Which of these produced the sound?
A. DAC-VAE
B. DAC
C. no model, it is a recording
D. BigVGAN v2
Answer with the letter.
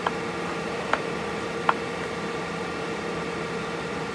D